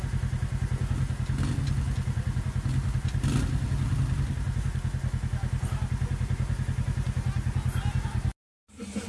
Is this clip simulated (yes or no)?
no